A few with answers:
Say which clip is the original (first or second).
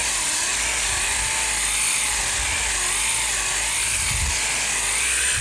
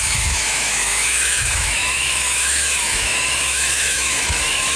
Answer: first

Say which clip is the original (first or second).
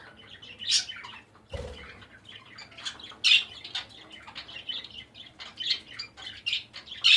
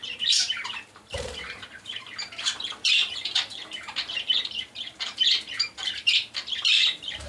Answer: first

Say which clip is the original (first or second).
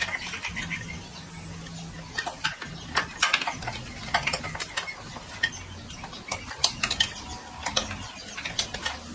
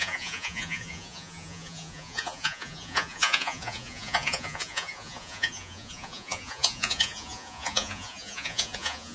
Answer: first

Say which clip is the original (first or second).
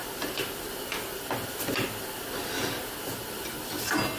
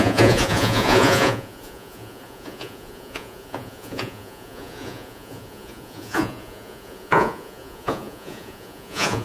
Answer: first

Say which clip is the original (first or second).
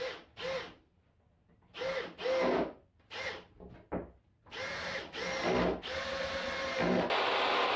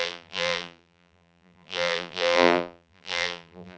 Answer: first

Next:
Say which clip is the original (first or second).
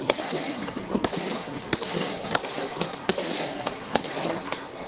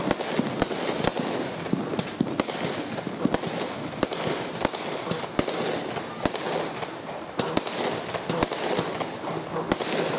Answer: second